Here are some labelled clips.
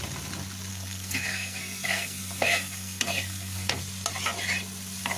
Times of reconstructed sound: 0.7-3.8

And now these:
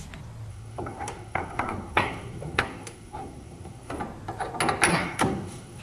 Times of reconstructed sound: 0.5-4.0; 4.9-5.8

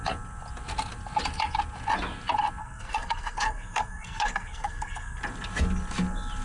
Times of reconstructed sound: 2.6-5.2

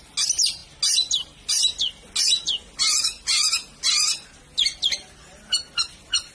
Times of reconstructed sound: none

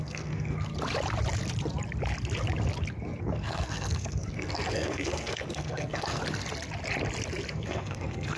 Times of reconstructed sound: 0.0-0.7; 3.2-6.2; 7.5-8.4

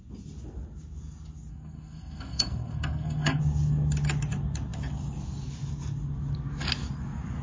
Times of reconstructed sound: 1.5-3.4